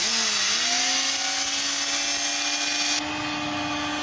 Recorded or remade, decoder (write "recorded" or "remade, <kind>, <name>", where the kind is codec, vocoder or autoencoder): recorded